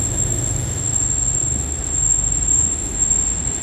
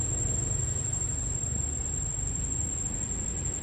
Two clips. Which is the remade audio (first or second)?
first